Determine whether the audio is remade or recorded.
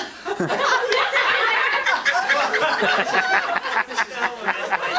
recorded